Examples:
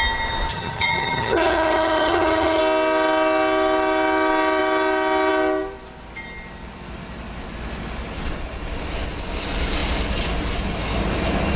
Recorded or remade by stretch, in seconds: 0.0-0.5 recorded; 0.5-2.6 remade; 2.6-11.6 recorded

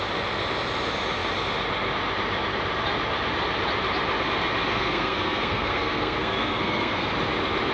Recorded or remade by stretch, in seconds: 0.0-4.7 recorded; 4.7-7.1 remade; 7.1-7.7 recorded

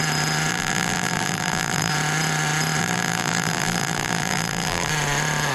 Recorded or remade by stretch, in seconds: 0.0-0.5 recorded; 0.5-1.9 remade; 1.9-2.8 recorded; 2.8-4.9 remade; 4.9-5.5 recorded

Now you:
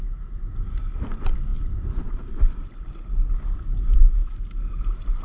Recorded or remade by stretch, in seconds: 0.0-5.2 recorded

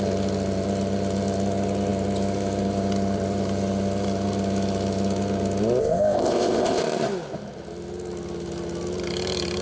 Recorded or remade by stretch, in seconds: 0.0-5.8 recorded; 5.8-6.8 remade; 6.8-9.6 recorded